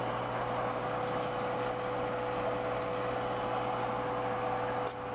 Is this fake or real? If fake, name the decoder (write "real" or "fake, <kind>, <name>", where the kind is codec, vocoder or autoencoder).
real